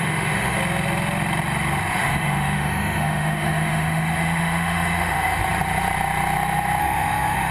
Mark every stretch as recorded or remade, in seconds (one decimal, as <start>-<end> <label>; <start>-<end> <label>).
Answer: 0.0-0.6 remade; 0.6-1.9 recorded; 1.9-5.4 remade; 5.4-6.8 recorded; 6.8-7.5 remade